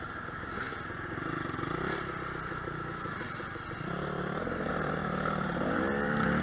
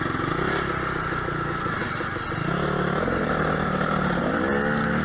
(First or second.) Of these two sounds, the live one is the second